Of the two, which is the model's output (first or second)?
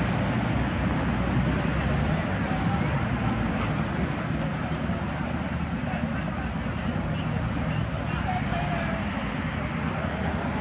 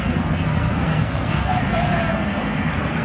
second